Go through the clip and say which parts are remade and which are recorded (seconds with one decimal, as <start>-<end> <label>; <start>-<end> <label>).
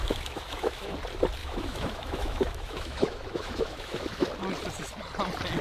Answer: 0.0-0.9 remade; 0.9-1.4 recorded; 1.4-4.3 remade; 4.3-5.6 recorded